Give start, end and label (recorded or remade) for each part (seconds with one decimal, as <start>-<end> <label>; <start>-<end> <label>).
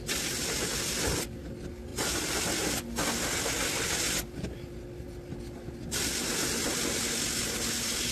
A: 0.0-1.9 recorded; 1.9-4.0 remade; 4.0-8.1 recorded